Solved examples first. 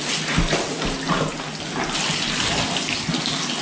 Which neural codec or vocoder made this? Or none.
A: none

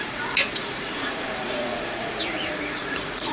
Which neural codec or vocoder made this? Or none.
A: vocoder, Vocos